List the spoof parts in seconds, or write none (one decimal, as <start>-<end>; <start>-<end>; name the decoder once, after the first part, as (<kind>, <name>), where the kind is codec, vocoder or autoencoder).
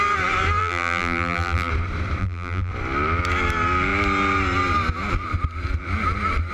0.6-1.7 (vocoder, BigVGAN v2); 2.2-2.7